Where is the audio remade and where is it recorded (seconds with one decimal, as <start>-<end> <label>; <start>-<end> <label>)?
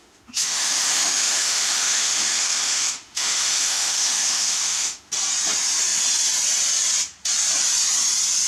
0.0-5.1 remade; 5.1-8.5 recorded